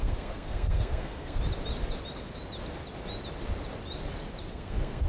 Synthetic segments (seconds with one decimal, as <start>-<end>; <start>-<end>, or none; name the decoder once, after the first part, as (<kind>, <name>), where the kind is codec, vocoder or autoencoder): 0.0-1.4 (codec, SNAC); 4.5-5.1